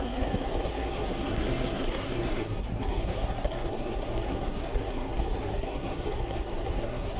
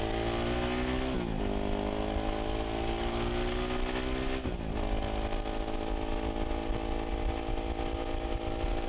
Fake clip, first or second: first